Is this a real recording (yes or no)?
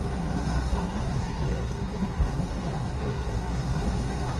no